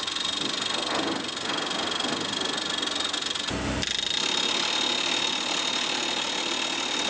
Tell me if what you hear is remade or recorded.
recorded